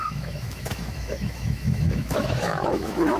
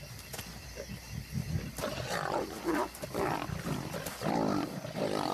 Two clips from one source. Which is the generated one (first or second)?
first